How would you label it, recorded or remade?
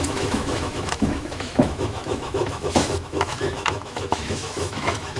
remade